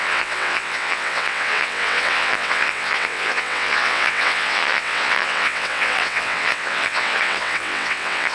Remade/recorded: remade